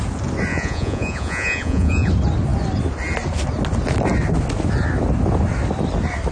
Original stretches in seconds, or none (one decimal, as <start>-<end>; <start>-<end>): 0.0-0.5; 2.1-6.3